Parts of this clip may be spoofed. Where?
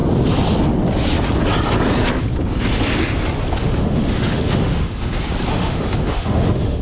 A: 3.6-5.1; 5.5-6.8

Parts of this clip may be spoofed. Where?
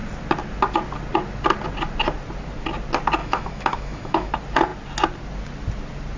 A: 3.2-4.3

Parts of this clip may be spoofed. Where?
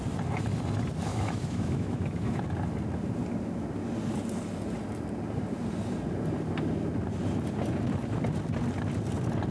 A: 1.1-2.4